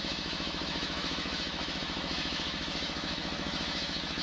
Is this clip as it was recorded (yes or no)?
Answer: no